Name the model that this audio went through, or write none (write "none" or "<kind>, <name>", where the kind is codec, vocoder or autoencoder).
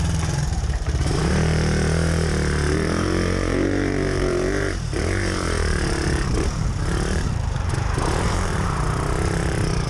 vocoder, BigVGAN v2